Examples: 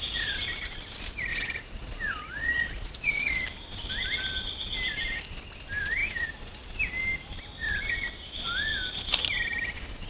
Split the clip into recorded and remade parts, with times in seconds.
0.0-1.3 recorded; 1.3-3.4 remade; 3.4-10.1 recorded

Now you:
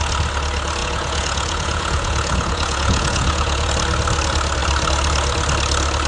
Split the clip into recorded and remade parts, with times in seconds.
0.0-0.8 recorded; 0.8-3.7 remade; 3.7-6.1 recorded